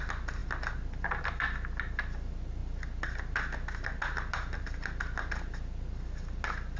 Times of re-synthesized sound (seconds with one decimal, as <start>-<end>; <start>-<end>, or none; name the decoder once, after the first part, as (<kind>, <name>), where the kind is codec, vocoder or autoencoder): none